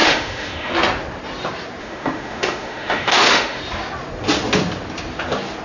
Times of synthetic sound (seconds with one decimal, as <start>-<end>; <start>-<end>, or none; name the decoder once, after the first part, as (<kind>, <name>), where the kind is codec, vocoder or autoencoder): 0.0-0.7 (autoencoder, DAC-VAE); 1.8-3.6

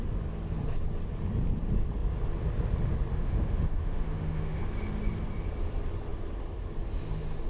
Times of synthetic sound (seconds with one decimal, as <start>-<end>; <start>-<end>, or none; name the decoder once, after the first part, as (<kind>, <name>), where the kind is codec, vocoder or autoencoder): 3.1-4.6 (autoencoder, DAC-VAE)